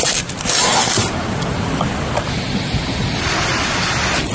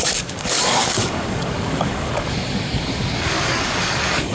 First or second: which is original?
first